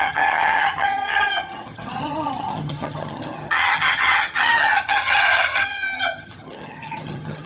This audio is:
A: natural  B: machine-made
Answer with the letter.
B